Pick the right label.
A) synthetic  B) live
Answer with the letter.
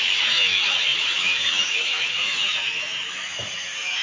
A